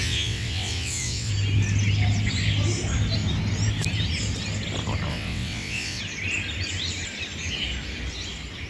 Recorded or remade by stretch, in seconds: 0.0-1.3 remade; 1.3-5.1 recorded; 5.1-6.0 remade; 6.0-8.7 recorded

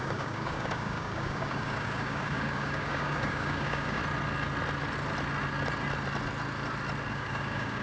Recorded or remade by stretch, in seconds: 0.0-4.0 remade; 4.0-7.1 recorded; 7.1-7.8 remade

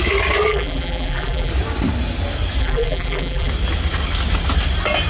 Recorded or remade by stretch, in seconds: 0.0-0.5 recorded; 0.5-1.5 remade; 1.5-2.6 recorded; 2.6-3.5 remade; 3.5-5.1 recorded

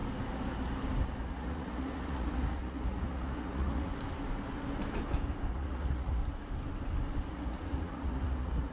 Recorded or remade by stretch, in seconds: 0.0-1.2 recorded; 1.2-3.9 remade; 3.9-5.5 recorded; 5.5-6.2 remade; 6.2-7.3 recorded; 7.3-8.7 remade

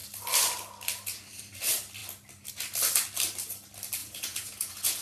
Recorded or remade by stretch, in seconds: 0.0-4.0 recorded; 4.0-5.0 remade

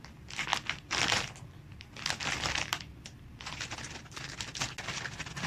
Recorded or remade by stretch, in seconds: 0.0-5.5 recorded